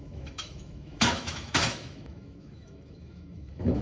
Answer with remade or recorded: remade